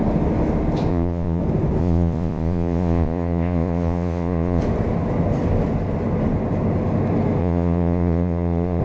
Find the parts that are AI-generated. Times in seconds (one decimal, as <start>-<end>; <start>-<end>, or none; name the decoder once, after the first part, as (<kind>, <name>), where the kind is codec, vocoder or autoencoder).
0.9-1.4 (vocoder, Vocos); 1.8-4.6; 7.4-8.8